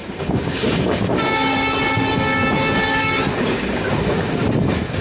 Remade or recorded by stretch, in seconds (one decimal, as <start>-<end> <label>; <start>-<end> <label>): 0.0-3.0 remade; 3.0-3.4 recorded; 3.4-3.9 remade; 3.9-5.0 recorded